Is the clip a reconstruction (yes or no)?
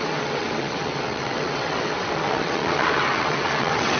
yes